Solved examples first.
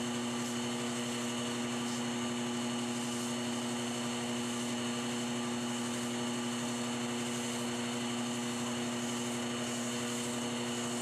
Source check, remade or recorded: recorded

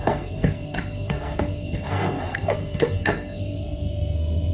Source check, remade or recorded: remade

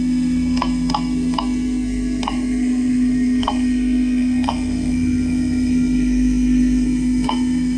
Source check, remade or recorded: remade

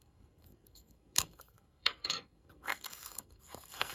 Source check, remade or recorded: remade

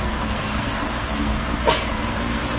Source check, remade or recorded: remade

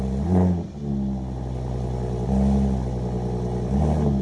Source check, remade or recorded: recorded